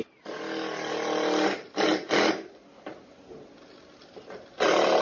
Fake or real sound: real